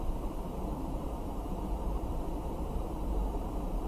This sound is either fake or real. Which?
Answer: fake